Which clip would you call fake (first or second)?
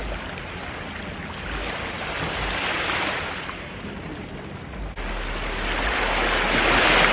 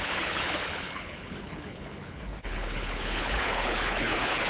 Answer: second